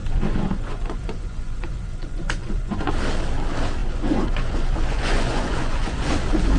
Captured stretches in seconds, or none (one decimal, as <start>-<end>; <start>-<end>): 2.9-3.8; 6.1-6.6

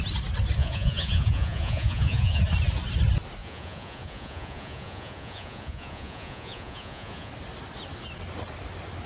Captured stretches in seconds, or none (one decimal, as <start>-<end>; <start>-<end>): 0.0-0.6; 2.4-3.4; 7.3-9.1

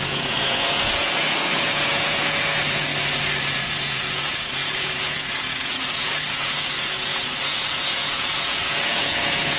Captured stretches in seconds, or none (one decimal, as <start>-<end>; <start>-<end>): 2.9-3.6

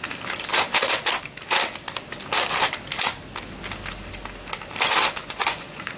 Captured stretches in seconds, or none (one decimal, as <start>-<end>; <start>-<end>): 0.0-5.2

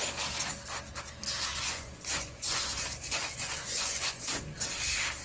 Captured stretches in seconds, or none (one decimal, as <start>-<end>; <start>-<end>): 0.0-1.5; 4.4-5.2

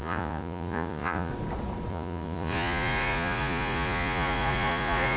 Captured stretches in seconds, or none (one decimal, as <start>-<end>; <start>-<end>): 1.3-1.9

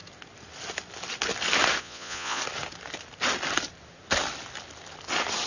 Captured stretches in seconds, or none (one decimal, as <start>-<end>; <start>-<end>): 0.0-1.8; 2.4-5.5

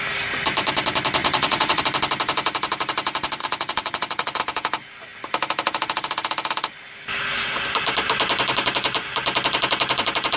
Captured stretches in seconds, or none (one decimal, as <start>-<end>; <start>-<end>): 0.0-1.2; 1.8-3.4; 4.4-10.4